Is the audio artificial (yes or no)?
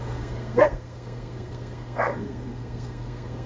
yes